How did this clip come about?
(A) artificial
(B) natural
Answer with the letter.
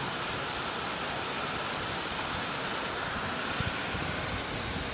B